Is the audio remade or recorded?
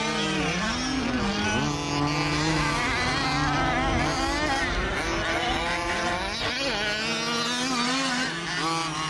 recorded